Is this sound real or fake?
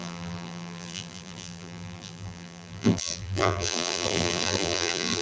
fake